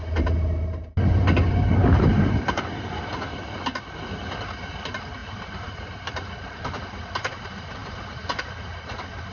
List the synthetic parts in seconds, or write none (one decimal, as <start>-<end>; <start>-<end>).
1.8-3.0; 5.2-7.1; 7.8-8.4